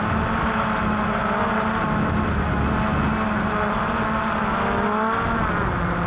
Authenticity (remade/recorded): recorded